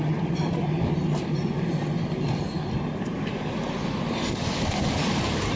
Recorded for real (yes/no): yes